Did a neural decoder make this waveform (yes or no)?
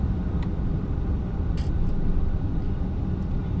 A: no